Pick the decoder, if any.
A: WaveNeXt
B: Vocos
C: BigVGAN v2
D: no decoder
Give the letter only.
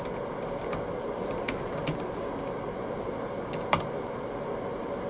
D